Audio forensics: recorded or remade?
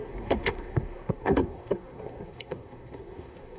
remade